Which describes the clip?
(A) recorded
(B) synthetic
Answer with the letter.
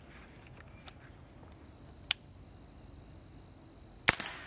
A